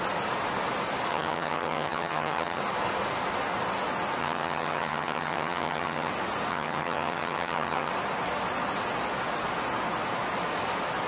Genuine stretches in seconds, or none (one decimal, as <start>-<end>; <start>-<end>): 0.0-1.1; 2.6-4.2; 6.1-6.5; 7.9-11.1